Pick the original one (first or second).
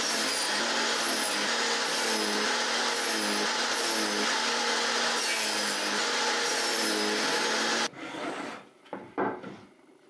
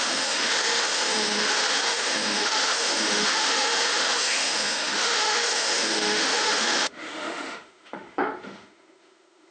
first